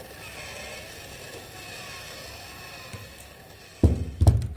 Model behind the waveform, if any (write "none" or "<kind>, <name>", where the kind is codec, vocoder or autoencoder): none